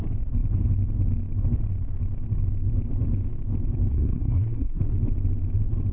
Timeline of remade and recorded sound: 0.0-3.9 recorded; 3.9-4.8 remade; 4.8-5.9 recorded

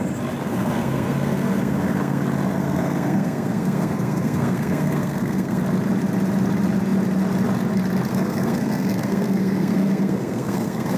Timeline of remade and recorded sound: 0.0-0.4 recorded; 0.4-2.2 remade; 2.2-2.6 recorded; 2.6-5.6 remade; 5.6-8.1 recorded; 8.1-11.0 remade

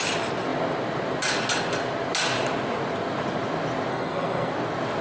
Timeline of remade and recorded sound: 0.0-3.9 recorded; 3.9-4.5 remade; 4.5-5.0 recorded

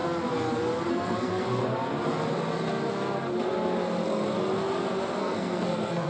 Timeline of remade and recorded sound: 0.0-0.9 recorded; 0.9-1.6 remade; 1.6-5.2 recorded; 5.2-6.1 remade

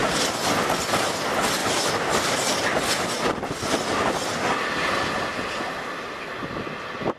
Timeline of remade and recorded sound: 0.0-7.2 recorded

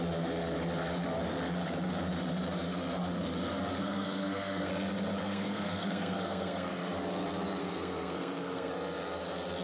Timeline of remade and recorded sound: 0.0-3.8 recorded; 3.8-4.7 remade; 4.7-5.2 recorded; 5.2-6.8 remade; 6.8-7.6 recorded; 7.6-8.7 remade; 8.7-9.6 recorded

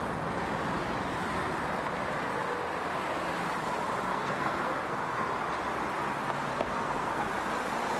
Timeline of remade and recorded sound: 0.0-4.1 recorded; 4.1-5.3 remade; 5.3-6.5 recorded; 6.5-7.3 remade; 7.3-8.0 recorded